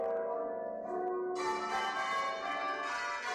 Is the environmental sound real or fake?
real